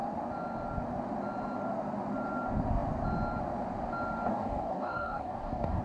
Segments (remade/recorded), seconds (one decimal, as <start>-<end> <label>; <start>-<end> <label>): 0.0-4.3 recorded; 4.3-5.8 remade